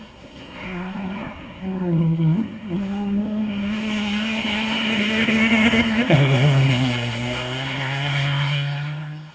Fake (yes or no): yes